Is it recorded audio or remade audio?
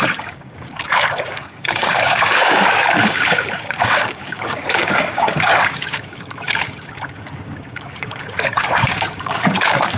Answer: remade